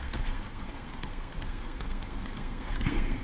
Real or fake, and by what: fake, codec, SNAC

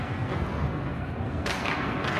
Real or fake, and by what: fake, codec, SNAC